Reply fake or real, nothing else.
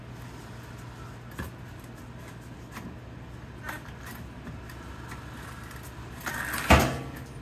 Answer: real